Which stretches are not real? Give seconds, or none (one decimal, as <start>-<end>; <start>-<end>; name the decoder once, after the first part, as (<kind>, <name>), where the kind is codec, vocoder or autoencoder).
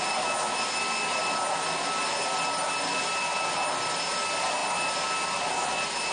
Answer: none